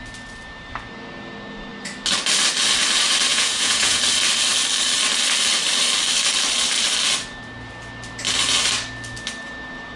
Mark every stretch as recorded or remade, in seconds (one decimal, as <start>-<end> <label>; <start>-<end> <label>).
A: 0.0-3.3 recorded; 3.3-4.0 remade; 4.0-10.0 recorded